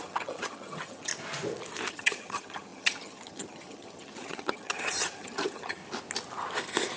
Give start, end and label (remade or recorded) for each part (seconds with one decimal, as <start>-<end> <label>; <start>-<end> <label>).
0.0-1.1 remade; 1.1-1.9 recorded; 1.9-5.8 remade; 5.8-7.0 recorded